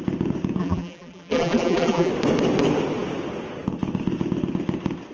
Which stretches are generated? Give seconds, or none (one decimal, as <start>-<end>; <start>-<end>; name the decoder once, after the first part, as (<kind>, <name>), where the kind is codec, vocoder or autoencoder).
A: 0.6-2.1 (vocoder, BigVGAN v2)